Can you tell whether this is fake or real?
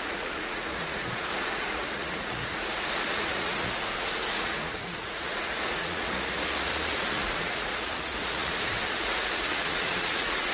fake